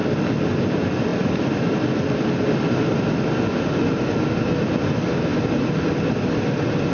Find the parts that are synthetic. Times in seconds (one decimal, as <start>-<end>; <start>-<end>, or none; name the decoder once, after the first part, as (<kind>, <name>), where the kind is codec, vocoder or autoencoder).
1.1-2.0 (vocoder, BigVGAN v2); 5.3-6.3